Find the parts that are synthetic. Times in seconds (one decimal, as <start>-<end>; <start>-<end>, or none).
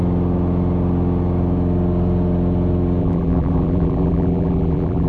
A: 3.0-5.1